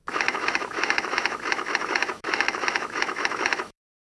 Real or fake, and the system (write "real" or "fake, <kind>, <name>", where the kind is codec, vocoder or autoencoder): fake, autoencoder, DAC-VAE